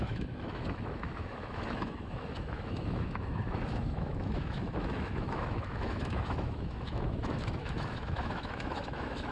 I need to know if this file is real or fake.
fake